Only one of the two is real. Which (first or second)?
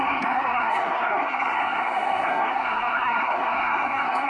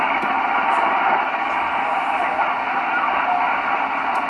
second